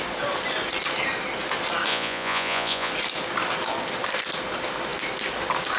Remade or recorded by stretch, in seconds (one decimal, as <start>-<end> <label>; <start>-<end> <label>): 0.0-1.9 recorded; 1.9-2.9 remade; 2.9-5.8 recorded